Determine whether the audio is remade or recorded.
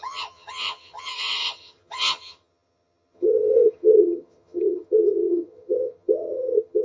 remade